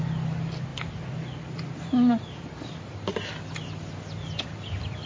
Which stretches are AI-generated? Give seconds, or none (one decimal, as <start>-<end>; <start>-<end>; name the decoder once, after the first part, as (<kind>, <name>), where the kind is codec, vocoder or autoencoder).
none